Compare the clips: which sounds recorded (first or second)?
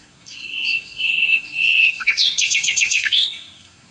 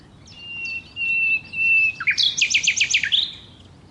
second